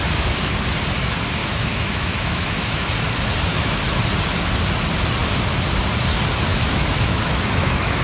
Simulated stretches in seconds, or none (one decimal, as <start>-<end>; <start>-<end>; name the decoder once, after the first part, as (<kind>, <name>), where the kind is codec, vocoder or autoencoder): 1.4-2.9 (autoencoder, DAC-VAE); 3.5-4.0; 6.5-8.0